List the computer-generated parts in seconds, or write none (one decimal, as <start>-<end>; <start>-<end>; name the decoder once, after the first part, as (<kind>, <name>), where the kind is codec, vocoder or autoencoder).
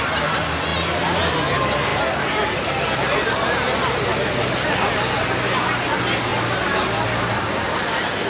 none